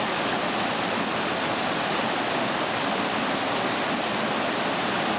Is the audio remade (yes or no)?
no